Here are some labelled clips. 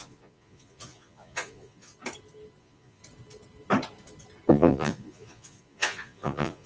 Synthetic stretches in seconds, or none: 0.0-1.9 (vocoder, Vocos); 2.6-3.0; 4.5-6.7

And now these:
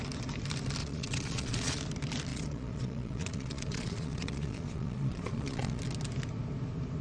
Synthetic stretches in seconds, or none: 0.8-1.8 (vocoder, Vocos); 2.3-5.8

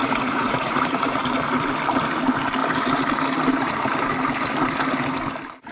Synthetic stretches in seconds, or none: 0.0-1.2 (vocoder, Vocos)

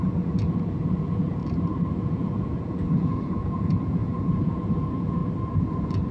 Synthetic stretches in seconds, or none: 0.0-1.4 (vocoder, Vocos); 2.0-5.2

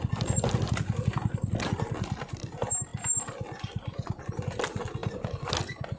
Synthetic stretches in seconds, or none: none

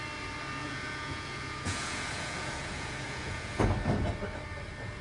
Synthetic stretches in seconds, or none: 0.6-3.6 (vocoder, Vocos)